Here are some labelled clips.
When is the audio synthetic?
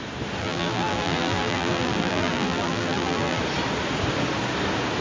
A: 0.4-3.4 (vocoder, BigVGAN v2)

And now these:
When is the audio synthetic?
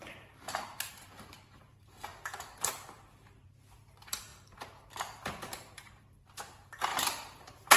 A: 0.0-7.8 (vocoder, BigVGAN v2)